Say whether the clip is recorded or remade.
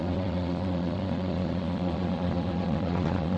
remade